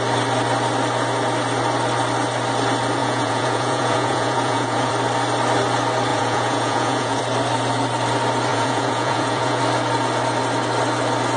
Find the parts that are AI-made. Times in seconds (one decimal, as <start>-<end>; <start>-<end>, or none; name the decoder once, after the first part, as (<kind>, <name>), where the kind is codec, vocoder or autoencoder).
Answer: 3.0-4.9 (vocoder, Vocos); 6.1-7.2; 8.5-9.6